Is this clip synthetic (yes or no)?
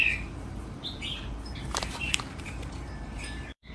yes